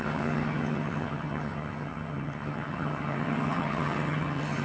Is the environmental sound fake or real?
fake